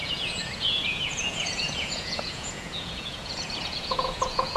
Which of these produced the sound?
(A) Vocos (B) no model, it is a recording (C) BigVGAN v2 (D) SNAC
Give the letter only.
A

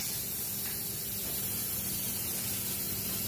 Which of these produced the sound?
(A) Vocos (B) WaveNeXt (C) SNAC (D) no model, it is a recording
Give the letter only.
D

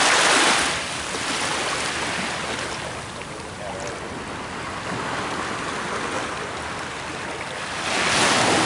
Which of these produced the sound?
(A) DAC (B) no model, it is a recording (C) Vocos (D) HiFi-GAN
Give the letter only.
B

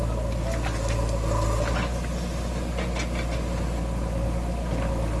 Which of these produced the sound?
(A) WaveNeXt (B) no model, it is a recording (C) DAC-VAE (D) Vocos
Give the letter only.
B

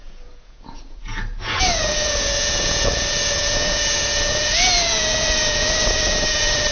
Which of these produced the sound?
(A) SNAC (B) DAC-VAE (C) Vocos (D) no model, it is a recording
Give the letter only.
C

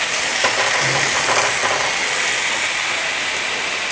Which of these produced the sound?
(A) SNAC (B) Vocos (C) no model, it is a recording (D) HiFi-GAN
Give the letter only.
C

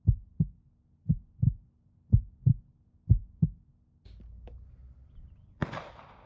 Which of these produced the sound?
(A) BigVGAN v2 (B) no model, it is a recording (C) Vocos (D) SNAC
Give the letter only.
B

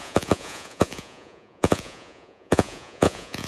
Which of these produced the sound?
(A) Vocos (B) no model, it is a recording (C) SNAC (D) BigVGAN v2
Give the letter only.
A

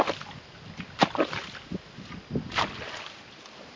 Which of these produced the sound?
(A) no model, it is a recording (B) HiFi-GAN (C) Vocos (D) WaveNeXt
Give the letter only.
A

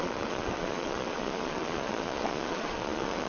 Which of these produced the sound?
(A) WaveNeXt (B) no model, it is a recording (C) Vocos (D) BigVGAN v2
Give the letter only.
C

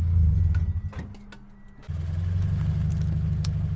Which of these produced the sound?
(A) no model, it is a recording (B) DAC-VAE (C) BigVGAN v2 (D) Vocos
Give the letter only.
A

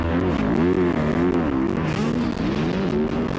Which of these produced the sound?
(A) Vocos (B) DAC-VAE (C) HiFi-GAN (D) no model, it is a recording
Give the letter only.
D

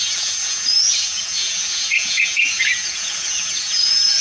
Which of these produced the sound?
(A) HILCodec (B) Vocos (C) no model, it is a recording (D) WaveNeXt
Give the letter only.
B